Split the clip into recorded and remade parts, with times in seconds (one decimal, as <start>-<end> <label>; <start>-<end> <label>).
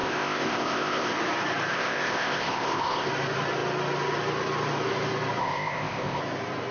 0.0-1.1 remade; 1.1-1.7 recorded; 1.7-3.1 remade; 3.1-5.4 recorded; 5.4-6.2 remade; 6.2-6.7 recorded